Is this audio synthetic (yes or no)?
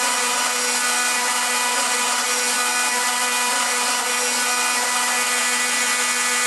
no